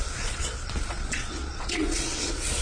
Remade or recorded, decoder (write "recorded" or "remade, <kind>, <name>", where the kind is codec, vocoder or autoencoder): remade, vocoder, Vocos